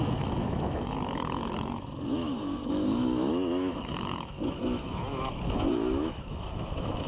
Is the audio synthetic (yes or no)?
yes